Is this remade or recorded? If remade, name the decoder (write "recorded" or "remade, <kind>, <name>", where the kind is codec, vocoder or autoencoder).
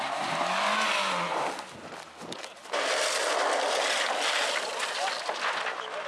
recorded